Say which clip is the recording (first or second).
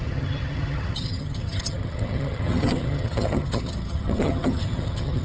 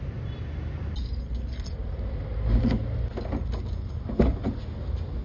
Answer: second